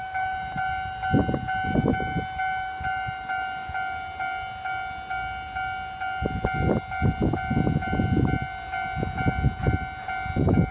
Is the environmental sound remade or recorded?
recorded